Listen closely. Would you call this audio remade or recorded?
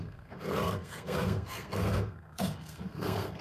remade